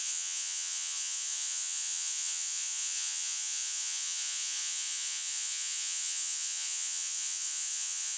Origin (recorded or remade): remade